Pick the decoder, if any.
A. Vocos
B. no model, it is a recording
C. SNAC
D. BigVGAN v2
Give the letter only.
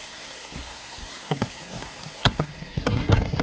C